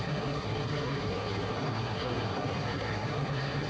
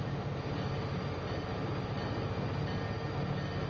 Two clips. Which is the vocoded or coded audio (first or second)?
first